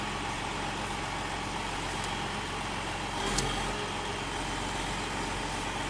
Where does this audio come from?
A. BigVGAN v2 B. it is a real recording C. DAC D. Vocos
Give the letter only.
B